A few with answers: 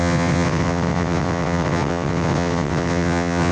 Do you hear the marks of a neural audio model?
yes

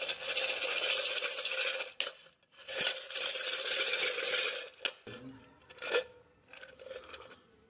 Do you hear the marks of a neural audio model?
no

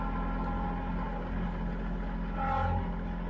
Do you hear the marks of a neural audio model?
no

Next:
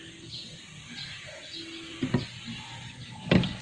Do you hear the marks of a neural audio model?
no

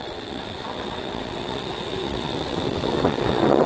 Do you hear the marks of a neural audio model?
yes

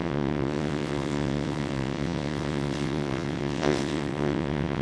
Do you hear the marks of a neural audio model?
yes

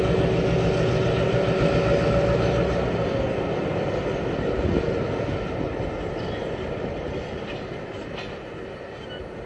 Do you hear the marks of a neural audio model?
no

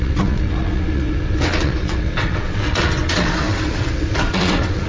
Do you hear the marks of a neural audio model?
yes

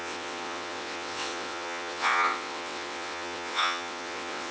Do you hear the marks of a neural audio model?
yes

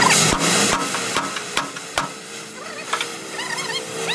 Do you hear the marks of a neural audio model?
no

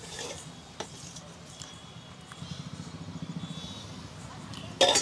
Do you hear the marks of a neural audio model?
no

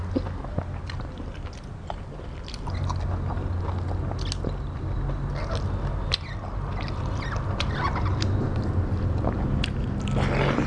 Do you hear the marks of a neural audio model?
no